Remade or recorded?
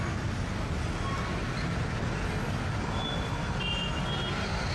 recorded